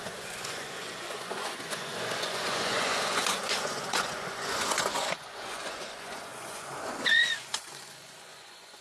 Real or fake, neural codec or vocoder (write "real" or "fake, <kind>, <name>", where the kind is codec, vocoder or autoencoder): fake, vocoder, Vocos